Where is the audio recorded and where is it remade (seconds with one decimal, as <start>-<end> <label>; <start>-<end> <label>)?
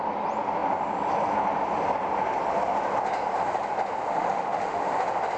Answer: 0.0-4.1 recorded; 4.1-4.8 remade; 4.8-5.4 recorded